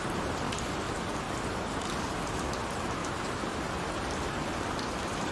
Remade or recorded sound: recorded